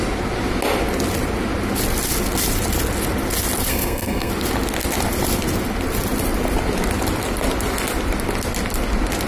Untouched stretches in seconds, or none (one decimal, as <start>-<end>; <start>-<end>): 0.0-3.7; 4.3-9.3